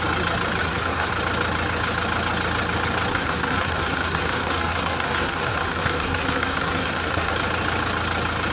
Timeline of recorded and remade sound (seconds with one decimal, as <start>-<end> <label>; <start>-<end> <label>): 0.0-0.6 recorded; 0.6-1.1 remade; 1.1-3.1 recorded; 3.1-7.3 remade; 7.3-8.5 recorded